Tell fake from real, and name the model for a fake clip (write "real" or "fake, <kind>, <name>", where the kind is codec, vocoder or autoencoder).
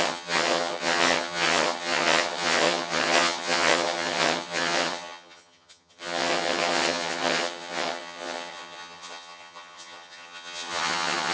fake, vocoder, HiFi-GAN